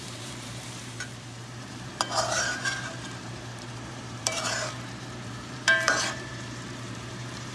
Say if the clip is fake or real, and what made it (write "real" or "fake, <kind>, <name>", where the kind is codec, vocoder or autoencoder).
fake, vocoder, BigVGAN v2